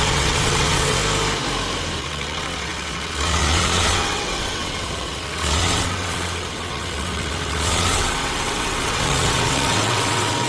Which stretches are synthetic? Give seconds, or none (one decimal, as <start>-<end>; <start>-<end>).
0.0-1.0; 2.0-10.5

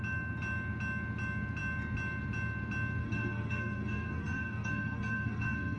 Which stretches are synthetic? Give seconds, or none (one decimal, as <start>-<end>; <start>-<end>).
3.0-5.8

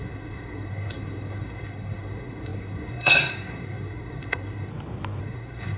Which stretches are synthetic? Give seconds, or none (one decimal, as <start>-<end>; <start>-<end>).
0.0-4.7; 5.2-5.8

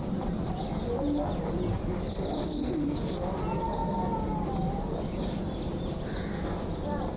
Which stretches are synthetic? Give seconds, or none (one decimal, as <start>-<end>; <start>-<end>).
2.5-3.2

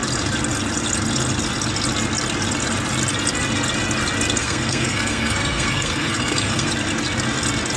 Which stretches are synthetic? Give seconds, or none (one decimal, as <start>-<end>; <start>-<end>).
4.4-6.7

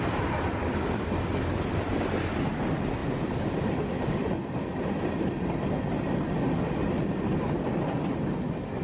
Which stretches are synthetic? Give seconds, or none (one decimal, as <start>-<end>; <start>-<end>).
none

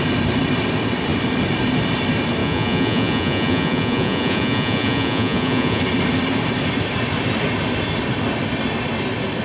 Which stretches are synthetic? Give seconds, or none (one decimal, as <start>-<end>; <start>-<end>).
2.4-5.8